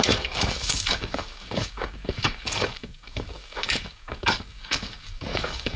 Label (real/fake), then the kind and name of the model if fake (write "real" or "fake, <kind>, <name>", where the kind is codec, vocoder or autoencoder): fake, codec, DAC